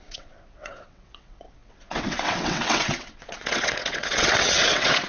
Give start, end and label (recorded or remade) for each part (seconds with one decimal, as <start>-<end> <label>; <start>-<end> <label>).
0.0-5.1 remade